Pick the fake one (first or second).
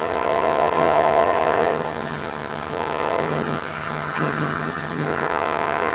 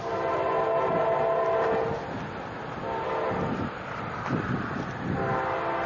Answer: first